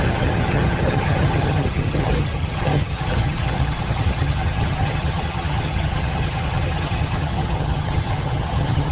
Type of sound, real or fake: fake